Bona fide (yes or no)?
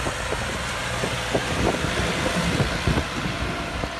yes